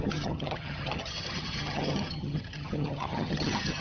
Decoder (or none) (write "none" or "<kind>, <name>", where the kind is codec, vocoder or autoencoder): vocoder, HiFi-GAN